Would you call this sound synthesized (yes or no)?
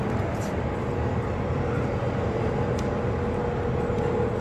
no